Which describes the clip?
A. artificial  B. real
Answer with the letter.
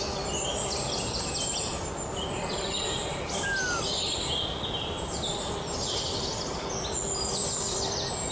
B